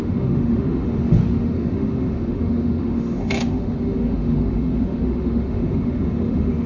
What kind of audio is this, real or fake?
fake